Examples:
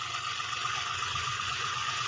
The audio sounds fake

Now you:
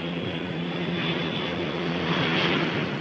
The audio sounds fake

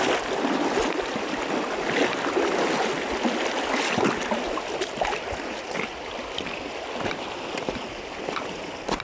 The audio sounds real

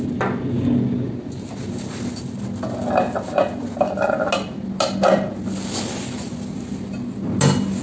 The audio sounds real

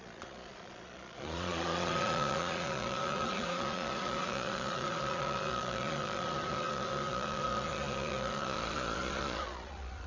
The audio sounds fake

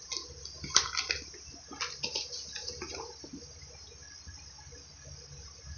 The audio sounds real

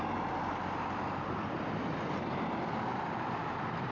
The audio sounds real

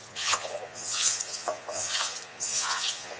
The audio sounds fake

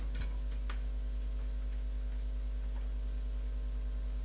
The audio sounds real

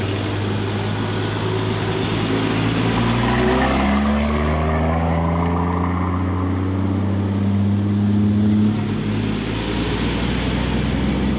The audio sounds real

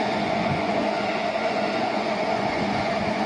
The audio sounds fake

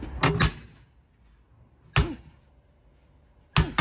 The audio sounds real